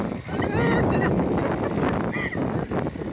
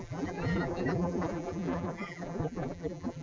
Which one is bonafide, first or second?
first